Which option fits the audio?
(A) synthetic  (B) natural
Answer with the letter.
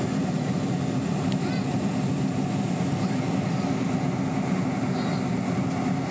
B